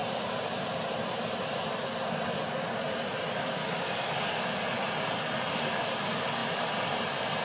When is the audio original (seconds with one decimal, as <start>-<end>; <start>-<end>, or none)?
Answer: 0.0-7.4